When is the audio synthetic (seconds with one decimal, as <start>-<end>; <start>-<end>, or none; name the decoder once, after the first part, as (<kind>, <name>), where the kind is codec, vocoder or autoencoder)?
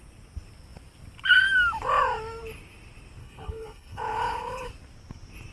3.2-4.7 (codec, HILCodec)